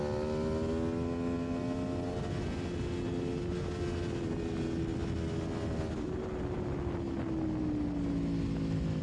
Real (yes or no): yes